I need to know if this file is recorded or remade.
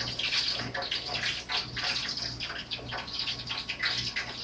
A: recorded